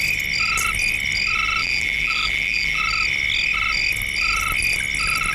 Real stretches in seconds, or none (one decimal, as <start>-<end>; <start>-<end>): 0.0-1.6; 2.8-5.3